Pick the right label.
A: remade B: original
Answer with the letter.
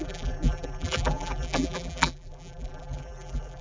A